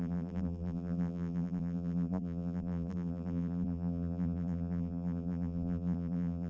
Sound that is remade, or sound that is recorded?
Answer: remade